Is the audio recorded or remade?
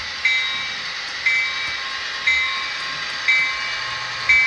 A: recorded